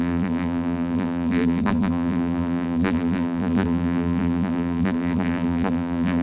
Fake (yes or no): yes